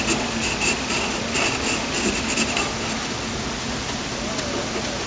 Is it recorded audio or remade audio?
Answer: recorded